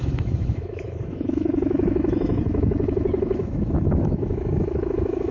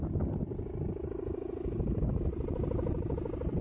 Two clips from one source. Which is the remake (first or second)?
first